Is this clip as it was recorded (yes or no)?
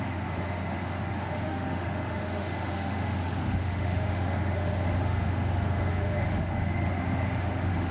no